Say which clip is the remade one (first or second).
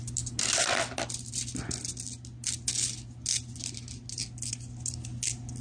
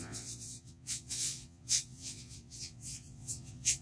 second